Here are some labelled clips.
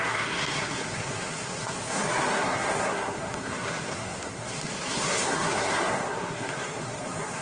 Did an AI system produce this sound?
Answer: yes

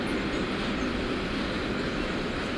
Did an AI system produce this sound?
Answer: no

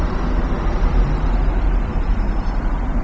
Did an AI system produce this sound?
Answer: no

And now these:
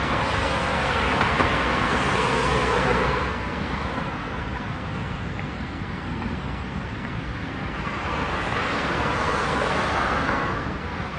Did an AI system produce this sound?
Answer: yes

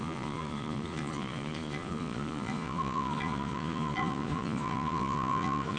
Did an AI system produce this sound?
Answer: yes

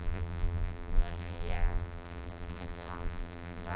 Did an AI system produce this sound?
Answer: yes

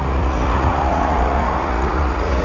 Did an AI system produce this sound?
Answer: yes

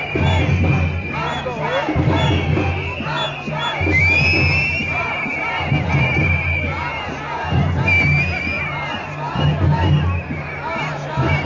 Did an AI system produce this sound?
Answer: no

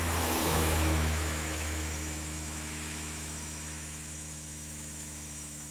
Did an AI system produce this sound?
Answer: yes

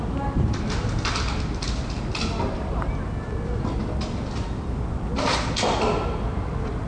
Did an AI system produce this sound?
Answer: no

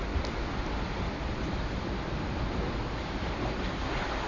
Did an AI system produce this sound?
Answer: no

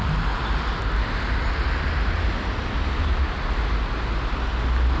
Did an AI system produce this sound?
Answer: no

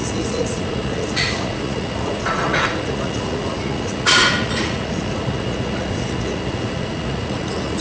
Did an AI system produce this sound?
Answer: yes